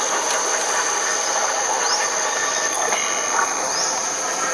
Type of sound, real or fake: real